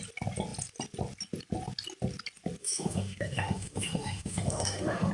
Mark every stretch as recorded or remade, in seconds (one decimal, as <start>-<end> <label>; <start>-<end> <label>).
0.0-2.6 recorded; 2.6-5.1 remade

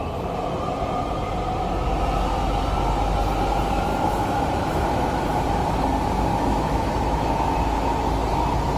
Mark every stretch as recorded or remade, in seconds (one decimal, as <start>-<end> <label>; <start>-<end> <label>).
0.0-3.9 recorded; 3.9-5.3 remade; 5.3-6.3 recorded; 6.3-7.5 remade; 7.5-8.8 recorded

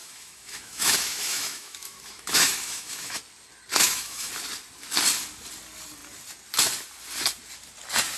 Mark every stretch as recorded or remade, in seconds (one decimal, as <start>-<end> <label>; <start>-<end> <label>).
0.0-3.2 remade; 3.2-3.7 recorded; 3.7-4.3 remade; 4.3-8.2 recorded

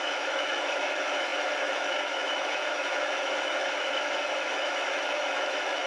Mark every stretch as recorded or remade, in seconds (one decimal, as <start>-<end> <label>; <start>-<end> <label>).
0.0-5.9 remade

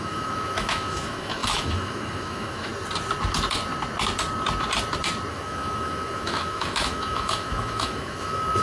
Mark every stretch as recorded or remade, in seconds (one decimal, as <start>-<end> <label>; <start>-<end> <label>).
0.0-2.7 remade; 2.7-5.3 recorded; 5.3-8.6 remade

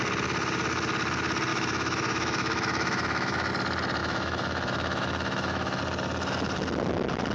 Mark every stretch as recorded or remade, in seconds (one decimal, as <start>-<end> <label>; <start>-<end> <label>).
0.0-1.5 recorded; 1.5-3.5 remade; 3.5-4.0 recorded; 4.0-5.8 remade; 5.8-7.3 recorded

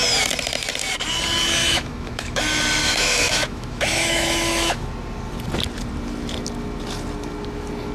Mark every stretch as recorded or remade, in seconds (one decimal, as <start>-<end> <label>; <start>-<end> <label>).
0.0-1.6 recorded; 1.6-2.4 remade; 2.4-2.8 recorded; 2.8-4.9 remade; 4.9-7.9 recorded